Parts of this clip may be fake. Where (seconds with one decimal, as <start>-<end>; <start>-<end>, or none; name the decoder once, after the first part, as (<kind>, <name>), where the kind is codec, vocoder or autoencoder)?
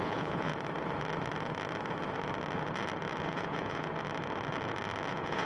0.0-0.5 (vocoder, Vocos); 3.2-3.9; 5.1-5.5